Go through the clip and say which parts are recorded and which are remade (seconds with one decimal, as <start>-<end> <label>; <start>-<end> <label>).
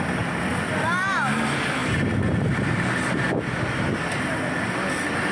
0.0-5.3 recorded